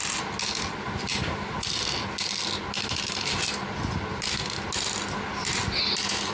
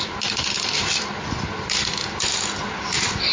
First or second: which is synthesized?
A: second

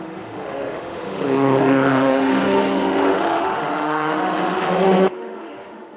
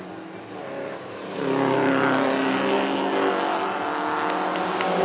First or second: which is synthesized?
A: first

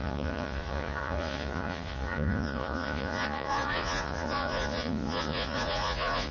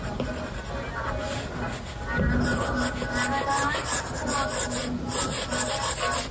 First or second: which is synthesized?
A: first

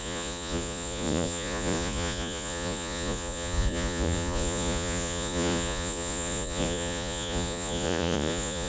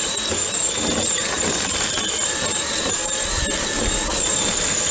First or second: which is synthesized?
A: first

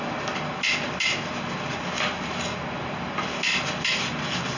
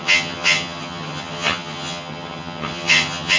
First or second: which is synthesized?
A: second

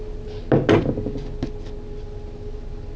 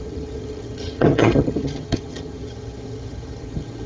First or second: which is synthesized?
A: second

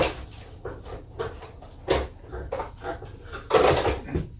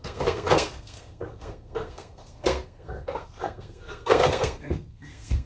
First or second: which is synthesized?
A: second